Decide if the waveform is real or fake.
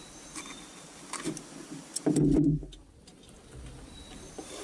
real